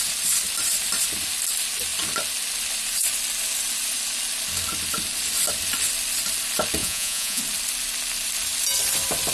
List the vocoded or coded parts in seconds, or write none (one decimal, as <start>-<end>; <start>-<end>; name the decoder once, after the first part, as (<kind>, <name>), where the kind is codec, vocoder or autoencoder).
6.8-7.4 (vocoder, Vocos)